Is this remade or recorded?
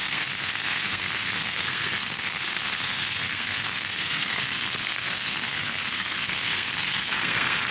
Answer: remade